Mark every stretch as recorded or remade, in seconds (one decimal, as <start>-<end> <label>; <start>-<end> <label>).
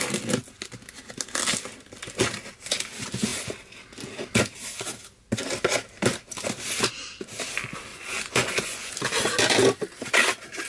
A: 0.0-7.9 recorded; 7.9-8.9 remade; 8.9-10.7 recorded